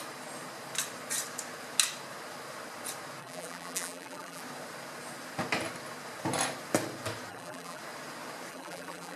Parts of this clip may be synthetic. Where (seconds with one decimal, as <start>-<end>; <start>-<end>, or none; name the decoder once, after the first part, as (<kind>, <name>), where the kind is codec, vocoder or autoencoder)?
3.2-4.4 (vocoder, BigVGAN v2); 7.3-7.8; 8.5-9.2